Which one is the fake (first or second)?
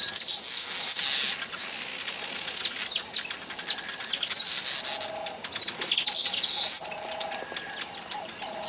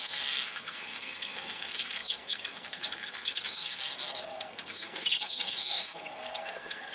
second